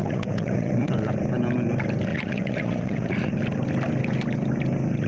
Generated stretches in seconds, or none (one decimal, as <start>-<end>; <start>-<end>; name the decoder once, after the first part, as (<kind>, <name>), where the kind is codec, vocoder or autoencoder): 0.0-0.9 (vocoder, Vocos); 2.1-3.3